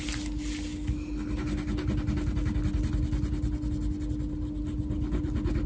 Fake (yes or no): no